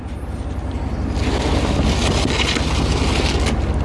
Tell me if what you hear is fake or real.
real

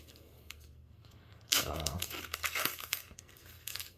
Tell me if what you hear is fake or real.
fake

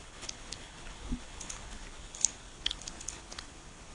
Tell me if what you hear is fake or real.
fake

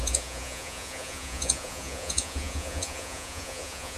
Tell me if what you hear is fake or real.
fake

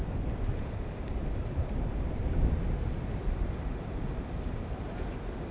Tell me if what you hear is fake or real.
real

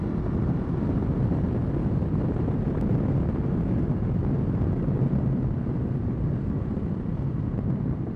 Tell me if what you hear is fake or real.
real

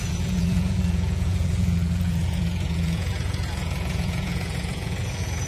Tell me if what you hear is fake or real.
fake